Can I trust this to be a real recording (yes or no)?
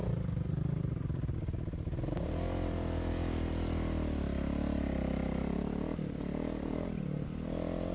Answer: yes